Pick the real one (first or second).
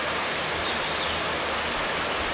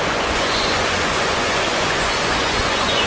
first